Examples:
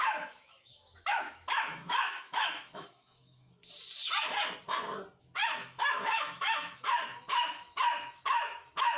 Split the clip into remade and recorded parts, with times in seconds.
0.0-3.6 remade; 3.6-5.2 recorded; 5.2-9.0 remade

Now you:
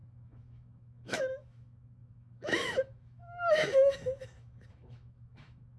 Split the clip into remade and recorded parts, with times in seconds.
0.0-5.8 remade

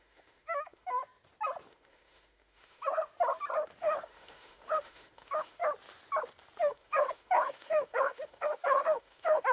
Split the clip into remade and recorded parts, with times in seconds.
0.0-1.0 remade; 1.0-1.7 recorded; 1.7-3.1 remade; 3.1-3.8 recorded; 3.8-5.6 remade; 5.6-6.6 recorded; 6.6-9.5 remade

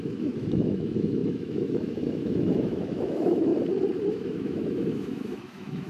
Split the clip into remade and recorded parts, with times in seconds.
0.0-3.5 remade; 3.5-4.1 recorded; 4.1-5.9 remade

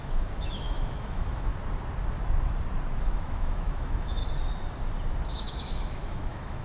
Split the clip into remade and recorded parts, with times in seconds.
0.0-1.5 remade; 1.5-3.0 recorded; 3.0-4.2 remade; 4.2-5.3 recorded; 5.3-6.6 remade